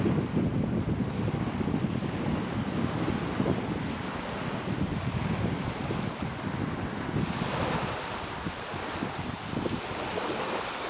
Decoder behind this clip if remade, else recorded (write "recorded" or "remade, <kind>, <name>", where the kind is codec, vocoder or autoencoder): recorded